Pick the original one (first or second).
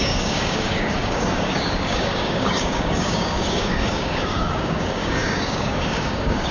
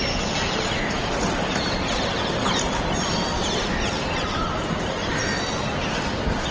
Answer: second